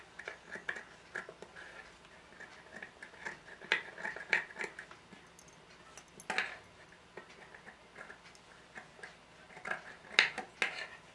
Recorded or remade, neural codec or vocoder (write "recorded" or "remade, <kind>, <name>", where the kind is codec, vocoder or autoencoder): recorded